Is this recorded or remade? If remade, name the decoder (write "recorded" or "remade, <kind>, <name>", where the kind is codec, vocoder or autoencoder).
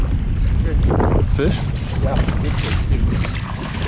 remade, vocoder, BigVGAN v2